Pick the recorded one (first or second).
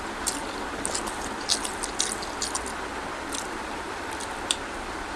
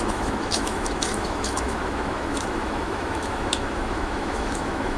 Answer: first